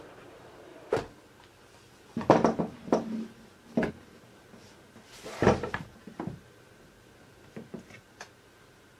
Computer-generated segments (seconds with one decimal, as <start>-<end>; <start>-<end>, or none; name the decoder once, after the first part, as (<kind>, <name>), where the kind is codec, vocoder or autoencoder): 0.0-0.7 (vocoder, BigVGAN v2); 3.9-9.0